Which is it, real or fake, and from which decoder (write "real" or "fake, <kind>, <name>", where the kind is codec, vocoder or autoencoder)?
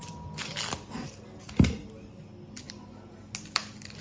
real